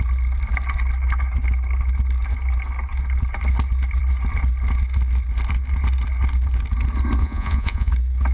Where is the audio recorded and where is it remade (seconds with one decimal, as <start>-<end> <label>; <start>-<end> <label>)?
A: 0.0-7.2 recorded; 7.2-7.9 remade; 7.9-8.3 recorded